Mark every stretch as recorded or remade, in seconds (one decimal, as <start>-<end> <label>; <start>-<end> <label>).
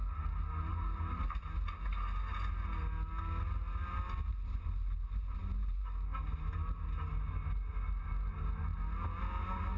0.0-9.8 recorded